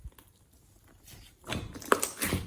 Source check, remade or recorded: recorded